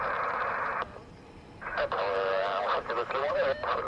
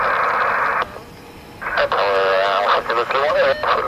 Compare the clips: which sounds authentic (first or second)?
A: second